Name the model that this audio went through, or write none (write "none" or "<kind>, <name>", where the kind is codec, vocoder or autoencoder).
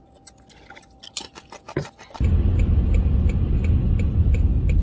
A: none